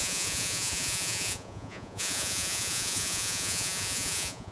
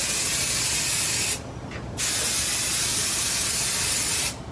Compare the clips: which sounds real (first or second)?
second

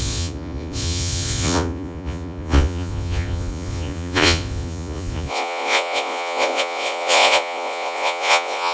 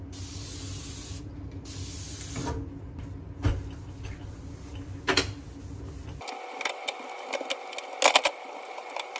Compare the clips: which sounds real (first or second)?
second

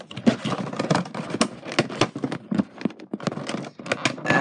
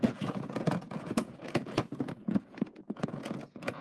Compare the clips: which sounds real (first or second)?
first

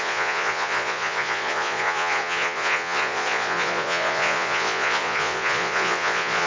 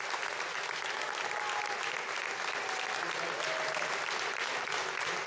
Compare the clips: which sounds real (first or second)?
second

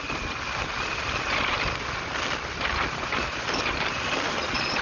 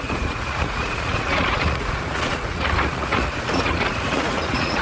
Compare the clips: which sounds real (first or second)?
first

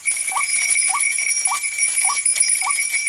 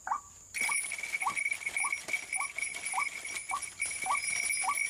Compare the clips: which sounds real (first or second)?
second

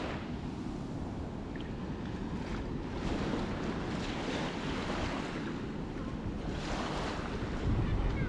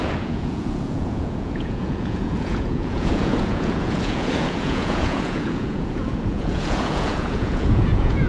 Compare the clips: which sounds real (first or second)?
first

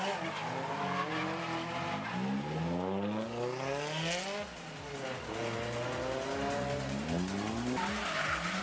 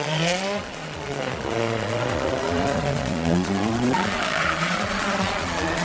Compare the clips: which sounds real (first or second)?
first